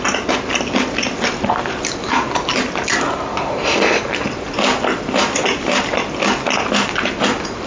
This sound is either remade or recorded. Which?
recorded